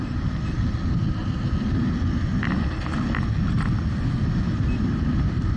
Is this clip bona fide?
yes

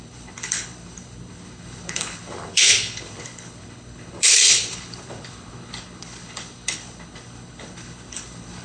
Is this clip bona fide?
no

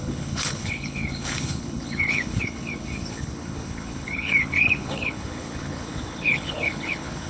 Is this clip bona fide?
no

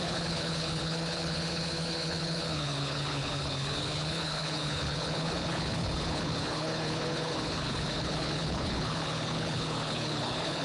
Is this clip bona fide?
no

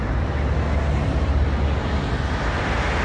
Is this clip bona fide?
yes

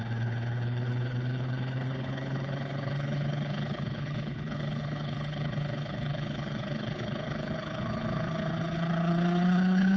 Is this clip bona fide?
no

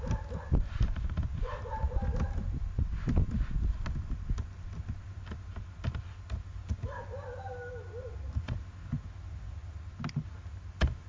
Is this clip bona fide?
yes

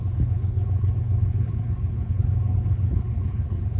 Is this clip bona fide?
no